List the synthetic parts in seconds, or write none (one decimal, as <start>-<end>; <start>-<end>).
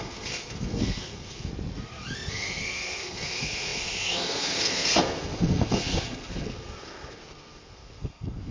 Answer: 0.0-1.5; 2.3-8.5